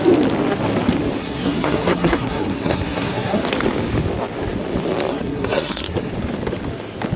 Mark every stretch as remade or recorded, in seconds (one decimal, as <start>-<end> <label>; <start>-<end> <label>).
0.0-1.2 recorded; 1.2-3.4 remade; 3.4-5.1 recorded; 5.1-6.1 remade; 6.1-7.2 recorded